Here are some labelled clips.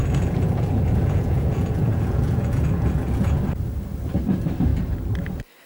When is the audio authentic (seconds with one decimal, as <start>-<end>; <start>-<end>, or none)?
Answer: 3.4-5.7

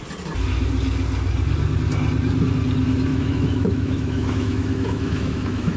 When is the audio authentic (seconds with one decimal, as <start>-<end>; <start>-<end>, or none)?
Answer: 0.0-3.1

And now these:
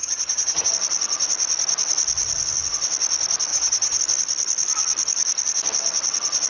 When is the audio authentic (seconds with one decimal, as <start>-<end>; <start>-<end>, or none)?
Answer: 0.7-3.5; 4.0-6.5

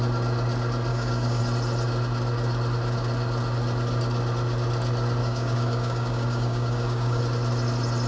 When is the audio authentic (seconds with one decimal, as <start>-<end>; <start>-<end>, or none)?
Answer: 0.0-0.9; 1.4-5.2; 7.2-8.1